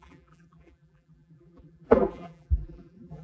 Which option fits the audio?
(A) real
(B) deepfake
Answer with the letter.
B